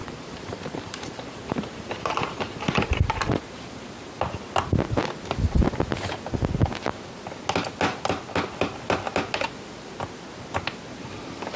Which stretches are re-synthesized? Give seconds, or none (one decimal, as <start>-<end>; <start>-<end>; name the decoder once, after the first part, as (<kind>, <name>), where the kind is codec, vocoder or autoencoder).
0.0-4.1 (vocoder, BigVGAN v2)